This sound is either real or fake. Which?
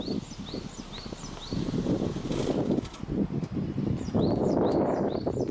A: real